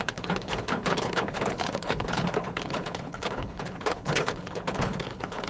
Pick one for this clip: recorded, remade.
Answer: remade